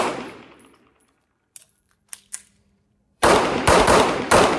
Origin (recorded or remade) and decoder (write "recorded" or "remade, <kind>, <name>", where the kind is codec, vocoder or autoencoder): remade, vocoder, BigVGAN v2